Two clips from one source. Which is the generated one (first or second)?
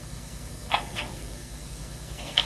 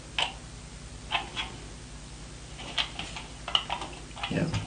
first